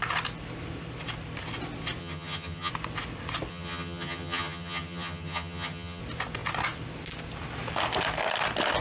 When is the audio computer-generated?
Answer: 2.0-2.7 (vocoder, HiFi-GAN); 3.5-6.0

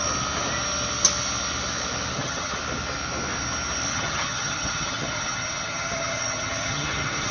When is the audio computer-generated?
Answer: 2.1-2.6 (vocoder, HiFi-GAN); 3.9-7.3

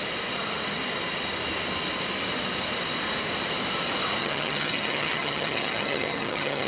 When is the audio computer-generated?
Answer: 4.2-6.7 (vocoder, HiFi-GAN)

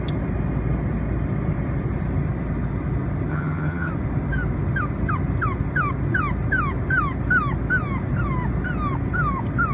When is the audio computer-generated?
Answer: 3.3-3.9 (vocoder, HiFi-GAN)

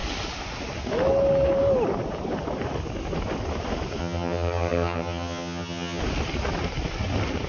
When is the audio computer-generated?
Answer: 4.0-6.0 (vocoder, HiFi-GAN)